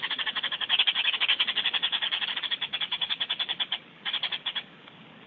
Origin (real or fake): fake